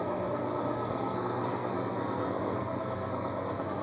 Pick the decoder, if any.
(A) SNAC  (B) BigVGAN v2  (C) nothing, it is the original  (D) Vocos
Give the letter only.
A